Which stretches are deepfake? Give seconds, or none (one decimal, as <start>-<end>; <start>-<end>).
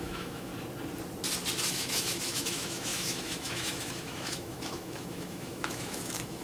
0.0-0.5; 1.7-6.4